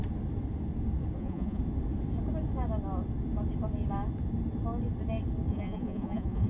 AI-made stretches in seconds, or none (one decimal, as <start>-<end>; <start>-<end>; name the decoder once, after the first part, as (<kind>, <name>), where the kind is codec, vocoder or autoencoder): 1.2-1.6 (vocoder, Vocos); 5.5-6.5